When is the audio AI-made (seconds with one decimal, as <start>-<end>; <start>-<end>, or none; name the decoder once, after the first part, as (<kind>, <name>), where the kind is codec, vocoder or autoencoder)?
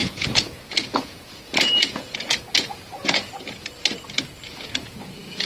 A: 0.0-3.3 (vocoder, Vocos); 4.5-5.5